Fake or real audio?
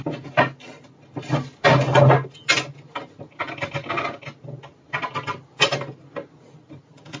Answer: real